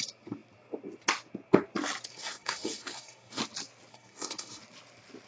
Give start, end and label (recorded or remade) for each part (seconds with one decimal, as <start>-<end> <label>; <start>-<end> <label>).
0.0-2.1 recorded; 2.1-3.4 remade; 3.4-3.9 recorded; 3.9-4.6 remade; 4.6-5.3 recorded